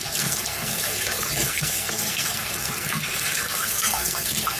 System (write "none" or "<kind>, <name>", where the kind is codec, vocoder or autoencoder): codec, SNAC